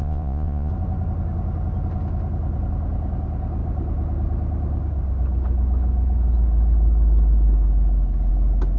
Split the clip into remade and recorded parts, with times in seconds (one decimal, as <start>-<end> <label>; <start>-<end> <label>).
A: 0.0-0.7 remade; 0.7-8.8 recorded